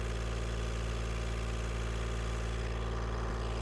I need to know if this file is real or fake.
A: real